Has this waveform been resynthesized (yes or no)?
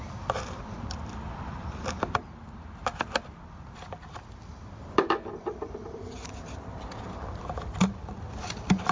yes